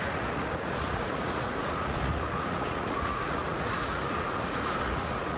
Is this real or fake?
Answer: fake